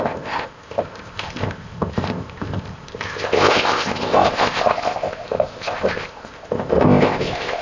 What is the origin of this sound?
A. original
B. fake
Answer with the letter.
B